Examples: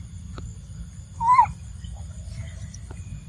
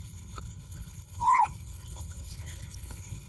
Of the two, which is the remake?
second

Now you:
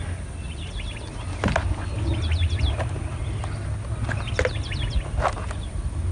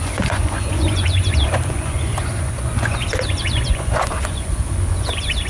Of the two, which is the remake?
second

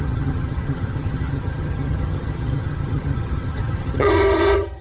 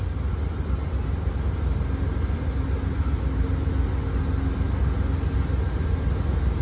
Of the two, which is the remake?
first